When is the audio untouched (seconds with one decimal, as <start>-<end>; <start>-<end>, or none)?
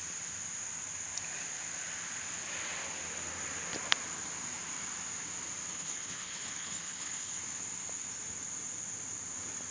0.0-5.7; 7.4-9.7